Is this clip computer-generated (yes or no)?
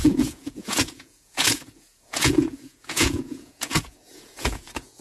yes